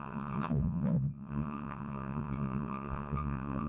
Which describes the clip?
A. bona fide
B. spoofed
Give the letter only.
B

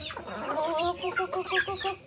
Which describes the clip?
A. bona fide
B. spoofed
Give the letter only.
B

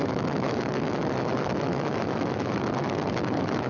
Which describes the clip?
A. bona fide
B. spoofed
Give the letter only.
B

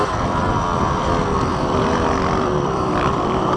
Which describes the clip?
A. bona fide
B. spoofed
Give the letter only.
B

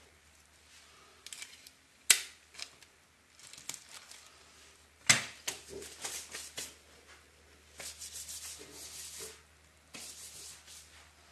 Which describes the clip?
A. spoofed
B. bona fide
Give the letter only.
B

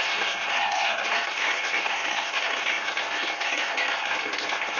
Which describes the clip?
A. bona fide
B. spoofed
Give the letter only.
B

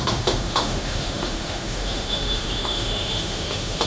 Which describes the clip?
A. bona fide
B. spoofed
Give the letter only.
B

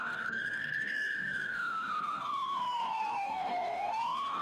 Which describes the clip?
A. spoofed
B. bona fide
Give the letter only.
A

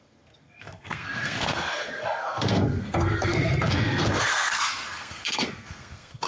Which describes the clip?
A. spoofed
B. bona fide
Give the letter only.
A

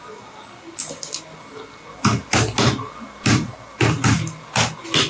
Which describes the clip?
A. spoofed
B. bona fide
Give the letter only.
B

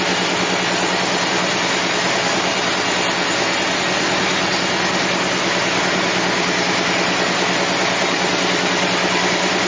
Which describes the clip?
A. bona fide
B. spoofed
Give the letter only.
A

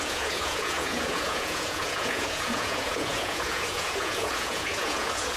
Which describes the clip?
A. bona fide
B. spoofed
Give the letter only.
B